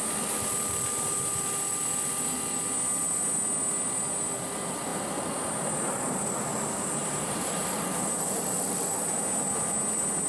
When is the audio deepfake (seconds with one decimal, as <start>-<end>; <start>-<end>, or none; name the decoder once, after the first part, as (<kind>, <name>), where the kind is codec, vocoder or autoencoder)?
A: 7.0-8.4 (vocoder, BigVGAN v2)